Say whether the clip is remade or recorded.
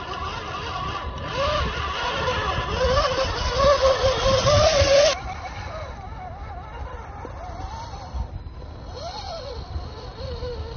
recorded